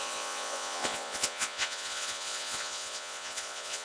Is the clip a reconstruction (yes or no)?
yes